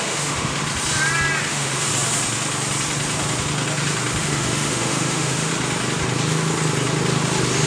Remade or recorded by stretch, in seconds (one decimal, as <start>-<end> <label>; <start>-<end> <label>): 0.0-0.6 remade; 0.6-1.5 recorded; 1.5-1.9 remade; 1.9-4.2 recorded; 4.2-5.5 remade; 5.5-7.7 recorded